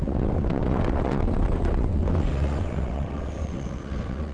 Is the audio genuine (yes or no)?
no